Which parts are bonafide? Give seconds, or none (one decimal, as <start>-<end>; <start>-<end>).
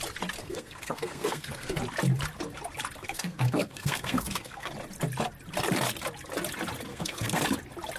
0.0-0.4; 1.8-3.0; 4.7-6.9; 7.4-8.0